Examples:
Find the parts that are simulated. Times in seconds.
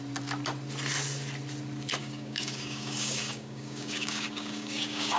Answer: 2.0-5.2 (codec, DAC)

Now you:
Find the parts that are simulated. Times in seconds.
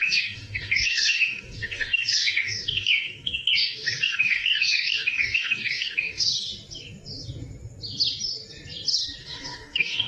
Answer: 0.0-6.3 (codec, DAC); 9.2-10.1